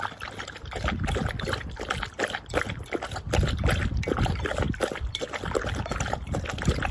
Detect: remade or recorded recorded